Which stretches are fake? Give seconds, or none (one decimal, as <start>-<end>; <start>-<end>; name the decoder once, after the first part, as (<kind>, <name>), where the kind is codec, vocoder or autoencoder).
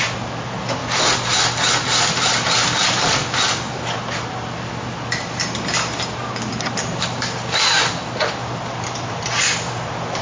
none